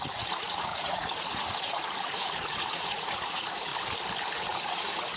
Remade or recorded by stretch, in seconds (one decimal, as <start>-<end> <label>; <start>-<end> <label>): 0.0-3.7 remade; 3.7-4.3 recorded; 4.3-5.2 remade